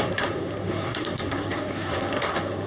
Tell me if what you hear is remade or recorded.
remade